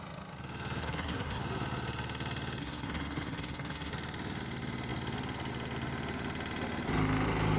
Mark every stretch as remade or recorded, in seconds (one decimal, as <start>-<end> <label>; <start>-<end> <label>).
0.0-0.8 recorded; 0.8-1.4 remade; 1.4-2.6 recorded; 2.6-3.9 remade; 3.9-7.6 recorded